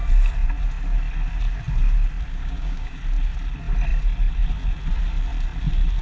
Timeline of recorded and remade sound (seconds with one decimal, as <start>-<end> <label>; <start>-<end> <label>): 0.0-2.3 recorded; 2.3-3.0 remade; 3.0-6.0 recorded